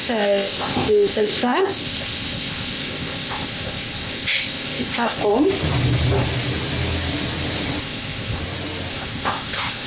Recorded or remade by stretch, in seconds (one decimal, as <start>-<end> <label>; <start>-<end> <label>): 0.0-5.2 remade; 5.2-7.8 recorded; 7.8-8.4 remade; 8.4-8.9 recorded; 8.9-9.9 remade